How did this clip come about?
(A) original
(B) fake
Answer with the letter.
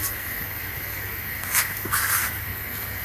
B